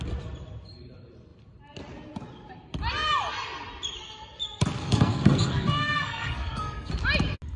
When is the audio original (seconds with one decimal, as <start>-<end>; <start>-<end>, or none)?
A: 0.0-4.8; 6.9-7.6